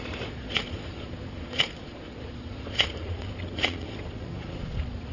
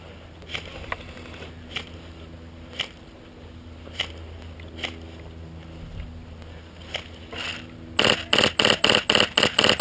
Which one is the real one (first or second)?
second